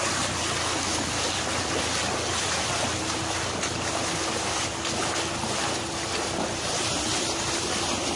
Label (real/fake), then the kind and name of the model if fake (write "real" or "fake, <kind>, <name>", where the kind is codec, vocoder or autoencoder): real